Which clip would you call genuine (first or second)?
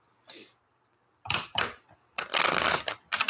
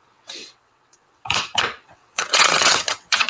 first